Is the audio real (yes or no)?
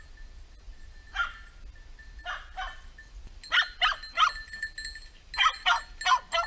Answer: yes